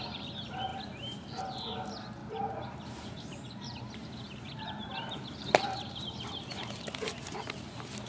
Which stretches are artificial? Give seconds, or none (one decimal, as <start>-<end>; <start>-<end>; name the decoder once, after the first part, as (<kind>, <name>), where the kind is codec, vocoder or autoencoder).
2.2-6.0 (vocoder, BigVGAN v2)